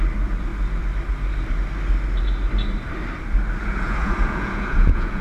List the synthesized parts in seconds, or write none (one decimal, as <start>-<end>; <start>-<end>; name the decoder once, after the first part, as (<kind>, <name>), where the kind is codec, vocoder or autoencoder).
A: 3.6-5.2 (vocoder, Vocos)